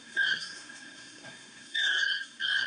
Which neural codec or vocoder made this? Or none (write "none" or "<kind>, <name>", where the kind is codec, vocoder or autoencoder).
codec, SNAC